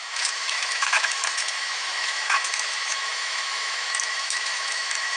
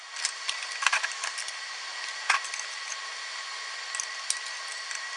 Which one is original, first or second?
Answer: second